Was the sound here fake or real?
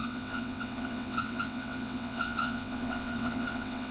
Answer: fake